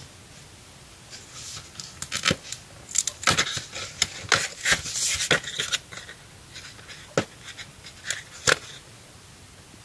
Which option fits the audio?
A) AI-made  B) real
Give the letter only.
B